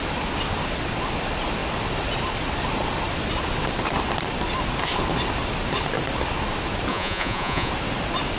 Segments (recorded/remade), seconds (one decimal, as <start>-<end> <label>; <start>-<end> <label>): 0.0-6.9 recorded; 6.9-7.7 remade; 7.7-8.4 recorded